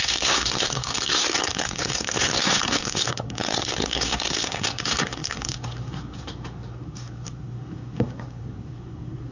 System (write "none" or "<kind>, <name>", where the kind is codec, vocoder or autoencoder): codec, SNAC